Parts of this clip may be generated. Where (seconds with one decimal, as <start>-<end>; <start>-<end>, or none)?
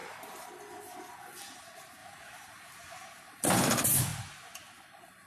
none